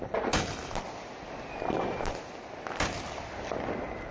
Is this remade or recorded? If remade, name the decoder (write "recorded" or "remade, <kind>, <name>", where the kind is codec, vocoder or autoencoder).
recorded